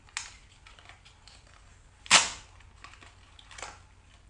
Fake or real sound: real